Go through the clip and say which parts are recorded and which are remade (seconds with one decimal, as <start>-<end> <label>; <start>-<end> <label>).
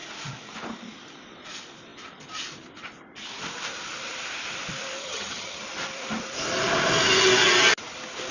0.0-5.0 recorded; 5.0-5.6 remade; 5.6-8.3 recorded